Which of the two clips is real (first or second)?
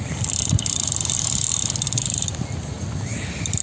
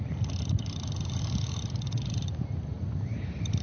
first